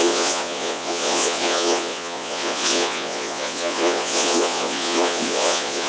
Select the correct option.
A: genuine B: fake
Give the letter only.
B